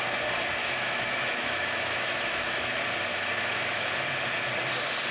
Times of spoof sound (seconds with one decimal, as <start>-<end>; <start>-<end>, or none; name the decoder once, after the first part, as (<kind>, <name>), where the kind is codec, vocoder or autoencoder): 0.6-2.7 (autoencoder, DAC-VAE); 3.1-3.9